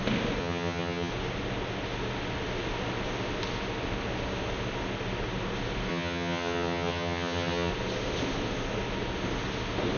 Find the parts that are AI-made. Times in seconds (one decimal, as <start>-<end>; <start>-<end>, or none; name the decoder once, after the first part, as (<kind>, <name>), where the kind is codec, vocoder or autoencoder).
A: 0.4-1.1 (vocoder, HiFi-GAN); 5.9-7.7